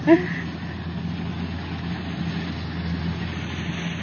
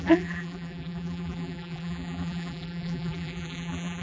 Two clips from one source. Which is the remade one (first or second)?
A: second